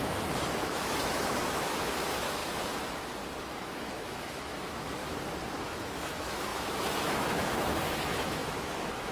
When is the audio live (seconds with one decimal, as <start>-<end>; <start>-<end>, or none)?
2.4-3.4; 5.0-5.6